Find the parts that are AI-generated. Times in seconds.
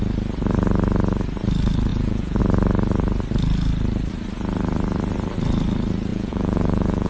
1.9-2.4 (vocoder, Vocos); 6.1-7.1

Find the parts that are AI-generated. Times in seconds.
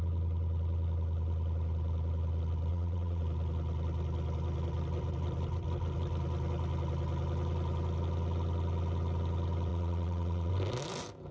2.7-3.2 (vocoder, Vocos); 9.7-10.5